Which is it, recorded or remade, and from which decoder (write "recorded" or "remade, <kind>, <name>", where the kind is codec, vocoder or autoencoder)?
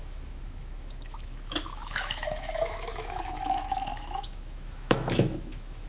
remade, autoencoder, DAC-VAE